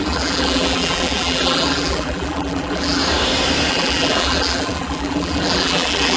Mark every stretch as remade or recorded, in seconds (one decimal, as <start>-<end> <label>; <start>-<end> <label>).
0.0-3.0 remade; 3.0-3.7 recorded; 3.7-6.2 remade